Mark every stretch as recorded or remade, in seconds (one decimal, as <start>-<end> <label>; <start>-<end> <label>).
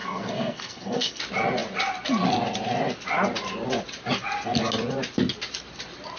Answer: 0.0-1.2 remade; 1.2-6.2 recorded